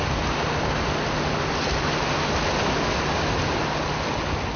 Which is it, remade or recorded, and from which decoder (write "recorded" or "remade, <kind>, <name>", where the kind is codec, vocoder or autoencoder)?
recorded